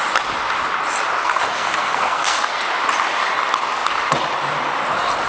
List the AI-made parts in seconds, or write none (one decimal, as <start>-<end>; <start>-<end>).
1.2-2.6